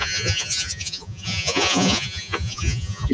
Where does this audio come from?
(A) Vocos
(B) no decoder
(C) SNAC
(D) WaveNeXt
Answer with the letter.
A